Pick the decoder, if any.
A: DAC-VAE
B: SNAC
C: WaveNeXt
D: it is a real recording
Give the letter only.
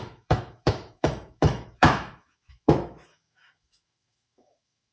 A